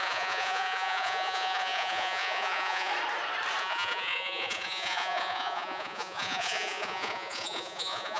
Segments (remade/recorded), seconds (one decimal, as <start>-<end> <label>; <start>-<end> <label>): 0.0-2.9 remade; 2.9-3.6 recorded; 3.6-8.2 remade